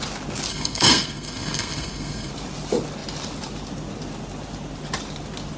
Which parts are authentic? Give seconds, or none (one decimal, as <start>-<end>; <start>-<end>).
0.0-0.5; 2.3-5.6